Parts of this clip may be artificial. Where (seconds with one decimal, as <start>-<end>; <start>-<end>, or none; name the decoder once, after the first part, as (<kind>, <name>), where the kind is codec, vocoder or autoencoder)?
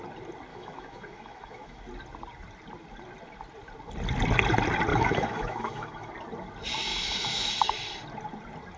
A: 0.5-1.8 (autoencoder, DAC-VAE); 4.9-6.1; 6.9-7.5